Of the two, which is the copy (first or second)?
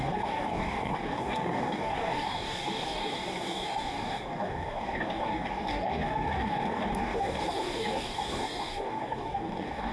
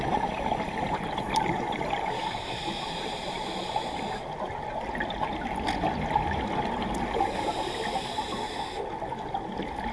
first